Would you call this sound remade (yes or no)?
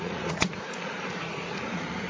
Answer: yes